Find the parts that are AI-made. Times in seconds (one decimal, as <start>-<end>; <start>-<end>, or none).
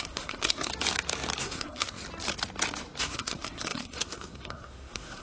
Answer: 0.0-0.7; 1.4-2.0; 3.0-5.2